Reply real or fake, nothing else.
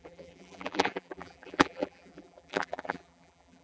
fake